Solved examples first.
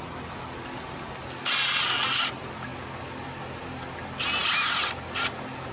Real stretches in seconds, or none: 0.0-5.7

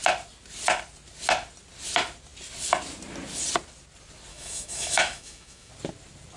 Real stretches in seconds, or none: 0.0-4.3; 5.7-6.4